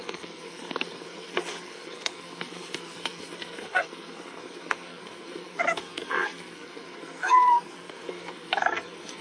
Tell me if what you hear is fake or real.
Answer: fake